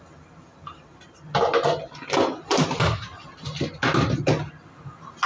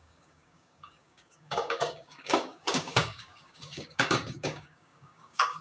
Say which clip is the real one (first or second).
first